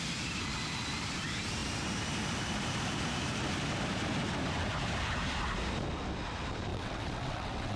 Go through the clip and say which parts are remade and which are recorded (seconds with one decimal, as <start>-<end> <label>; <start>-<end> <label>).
0.0-6.7 recorded; 6.7-7.8 remade